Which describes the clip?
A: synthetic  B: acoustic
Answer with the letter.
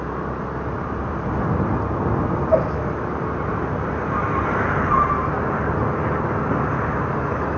B